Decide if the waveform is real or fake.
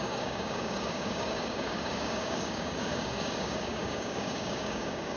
fake